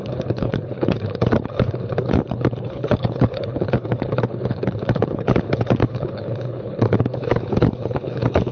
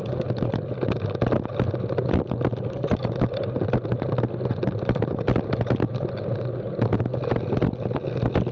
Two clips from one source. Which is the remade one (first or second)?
first